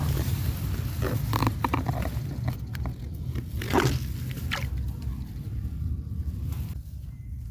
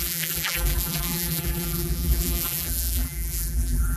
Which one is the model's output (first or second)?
second